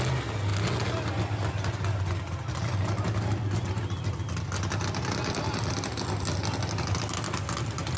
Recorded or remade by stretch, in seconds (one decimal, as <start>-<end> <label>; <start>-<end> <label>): 0.0-8.0 recorded

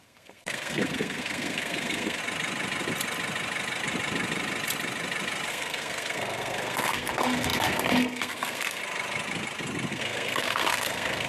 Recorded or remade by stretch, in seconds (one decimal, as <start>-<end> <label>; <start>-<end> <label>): 0.0-2.2 remade; 2.2-5.5 recorded; 5.5-8.8 remade; 8.8-9.9 recorded; 9.9-11.3 remade

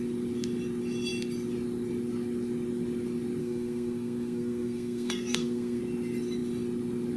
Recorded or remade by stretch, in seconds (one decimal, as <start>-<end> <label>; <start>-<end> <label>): 0.0-3.4 recorded; 3.4-5.8 remade; 5.8-7.2 recorded

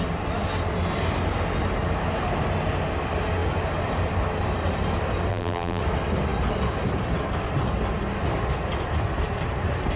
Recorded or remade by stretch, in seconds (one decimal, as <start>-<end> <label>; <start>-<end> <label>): 0.0-5.3 recorded; 5.3-5.8 remade; 5.8-10.0 recorded

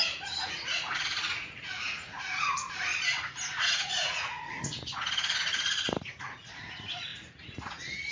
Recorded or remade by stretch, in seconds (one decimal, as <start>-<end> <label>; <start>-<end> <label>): 0.0-2.9 remade; 2.9-3.6 recorded; 3.6-8.1 remade

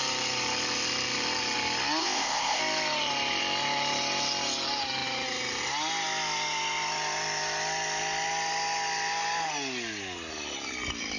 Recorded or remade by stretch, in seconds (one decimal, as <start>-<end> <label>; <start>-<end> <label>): 0.0-2.0 recorded; 2.0-2.6 remade; 2.6-11.2 recorded

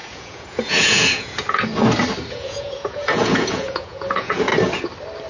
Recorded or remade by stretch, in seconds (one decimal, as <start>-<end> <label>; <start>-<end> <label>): 0.0-1.7 remade; 1.7-2.3 recorded; 2.3-4.5 remade; 4.5-5.3 recorded